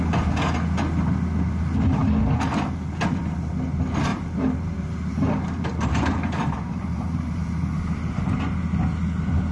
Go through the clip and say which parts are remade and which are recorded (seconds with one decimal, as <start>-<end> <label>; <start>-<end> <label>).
0.0-4.1 recorded; 4.1-8.4 remade; 8.4-9.5 recorded